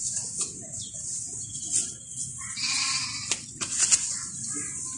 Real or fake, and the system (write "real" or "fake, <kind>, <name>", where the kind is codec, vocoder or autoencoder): real